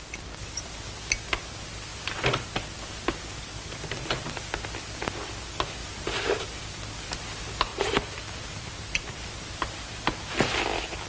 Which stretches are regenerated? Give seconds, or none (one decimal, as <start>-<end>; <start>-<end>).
1.9-2.5; 5.8-6.4; 7.7-10.3